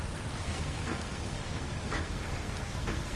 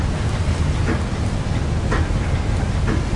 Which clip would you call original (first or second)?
second